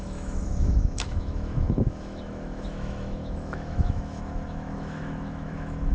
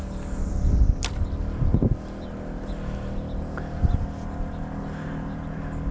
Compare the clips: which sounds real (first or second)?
second